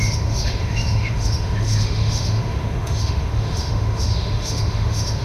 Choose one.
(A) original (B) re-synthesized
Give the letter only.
B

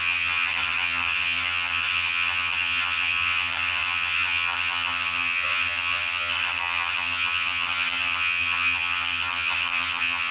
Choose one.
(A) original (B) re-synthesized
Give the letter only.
B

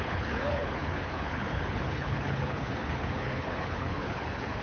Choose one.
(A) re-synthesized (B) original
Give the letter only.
A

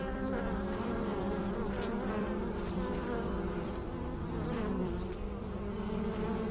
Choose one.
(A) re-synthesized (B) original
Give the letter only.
A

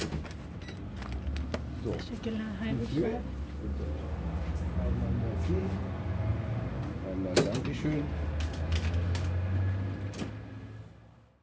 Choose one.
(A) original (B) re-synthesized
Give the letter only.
A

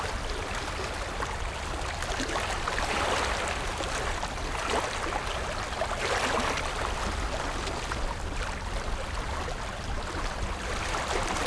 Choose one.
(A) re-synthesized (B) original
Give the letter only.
B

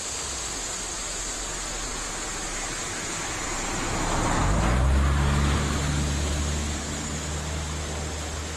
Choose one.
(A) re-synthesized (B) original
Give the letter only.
B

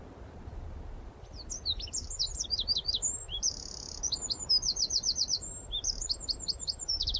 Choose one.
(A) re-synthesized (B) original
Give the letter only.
B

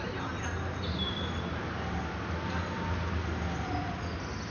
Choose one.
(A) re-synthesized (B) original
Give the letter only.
B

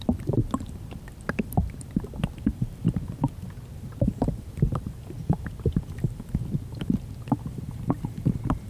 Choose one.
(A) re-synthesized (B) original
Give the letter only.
A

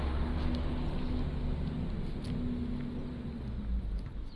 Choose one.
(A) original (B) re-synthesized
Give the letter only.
A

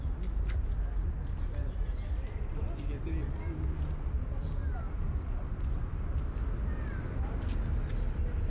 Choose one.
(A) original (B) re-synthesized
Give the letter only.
A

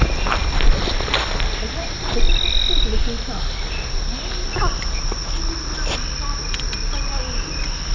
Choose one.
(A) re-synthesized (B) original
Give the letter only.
B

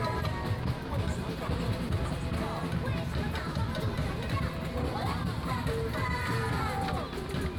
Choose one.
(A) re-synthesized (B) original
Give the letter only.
B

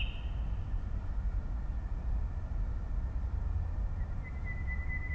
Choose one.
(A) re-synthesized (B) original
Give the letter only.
B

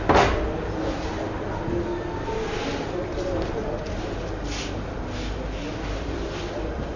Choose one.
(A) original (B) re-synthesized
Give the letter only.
A